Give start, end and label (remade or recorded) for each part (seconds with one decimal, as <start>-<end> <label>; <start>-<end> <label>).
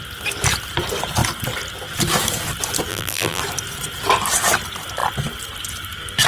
0.0-2.9 recorded; 2.9-3.4 remade; 3.4-6.3 recorded